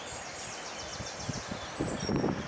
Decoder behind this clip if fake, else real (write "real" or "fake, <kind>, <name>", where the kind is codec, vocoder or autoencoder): real